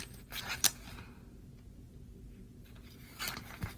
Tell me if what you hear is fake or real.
real